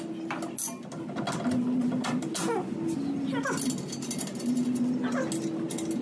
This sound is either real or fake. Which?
real